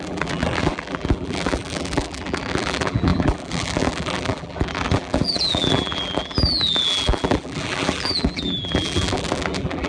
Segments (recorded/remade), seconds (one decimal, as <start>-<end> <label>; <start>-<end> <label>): 0.0-9.9 remade